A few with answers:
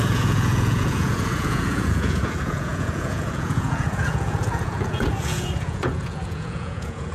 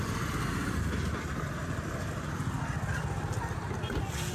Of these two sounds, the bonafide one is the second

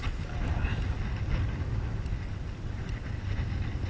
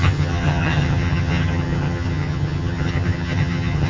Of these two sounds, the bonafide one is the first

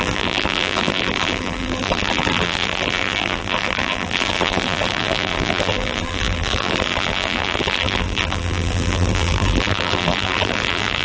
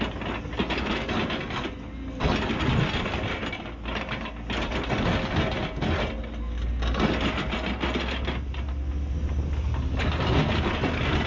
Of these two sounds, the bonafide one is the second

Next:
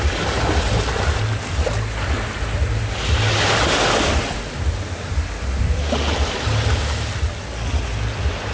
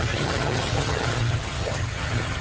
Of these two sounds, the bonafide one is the first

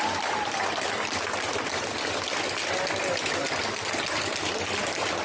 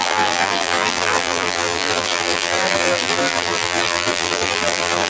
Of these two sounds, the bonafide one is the first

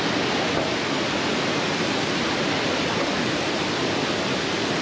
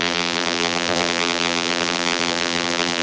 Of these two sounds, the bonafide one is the first